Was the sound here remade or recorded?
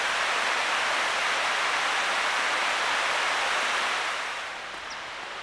recorded